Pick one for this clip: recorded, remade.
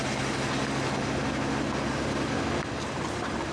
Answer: recorded